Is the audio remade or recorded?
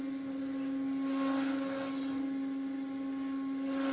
recorded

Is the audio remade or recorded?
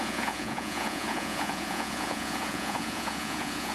remade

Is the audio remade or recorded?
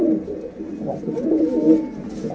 recorded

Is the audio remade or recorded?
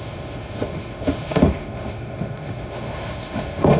remade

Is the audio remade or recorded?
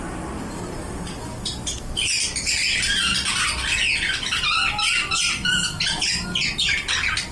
recorded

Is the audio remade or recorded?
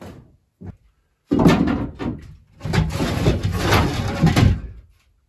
recorded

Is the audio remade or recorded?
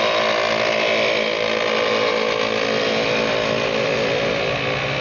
recorded